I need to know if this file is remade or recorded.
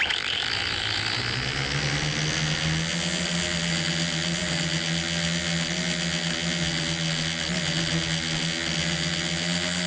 recorded